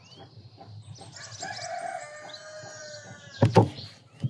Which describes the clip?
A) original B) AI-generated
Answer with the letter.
A